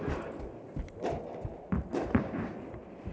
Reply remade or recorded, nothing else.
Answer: recorded